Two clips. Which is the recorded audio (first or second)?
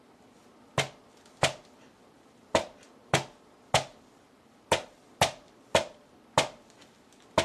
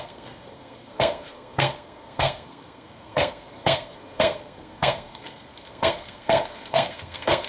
first